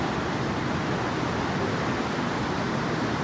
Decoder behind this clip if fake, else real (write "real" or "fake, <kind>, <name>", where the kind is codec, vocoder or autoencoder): real